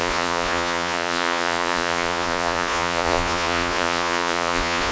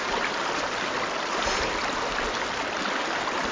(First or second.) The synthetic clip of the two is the first